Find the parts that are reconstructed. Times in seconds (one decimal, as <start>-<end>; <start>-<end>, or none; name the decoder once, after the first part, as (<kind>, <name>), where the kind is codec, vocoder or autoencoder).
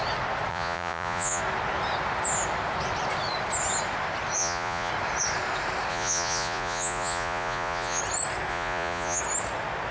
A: 0.5-1.4 (vocoder, Vocos); 4.4-4.9; 5.9-8.0; 8.5-9.2